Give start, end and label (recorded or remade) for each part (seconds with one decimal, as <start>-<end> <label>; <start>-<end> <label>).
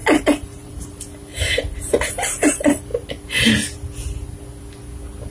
0.0-0.9 remade; 0.9-1.3 recorded; 1.3-2.1 remade; 2.1-5.3 recorded